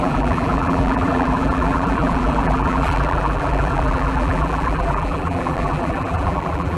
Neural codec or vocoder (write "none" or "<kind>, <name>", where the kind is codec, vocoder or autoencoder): vocoder, BigVGAN v2